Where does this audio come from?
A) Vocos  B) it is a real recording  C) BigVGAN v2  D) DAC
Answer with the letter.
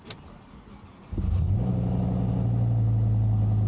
B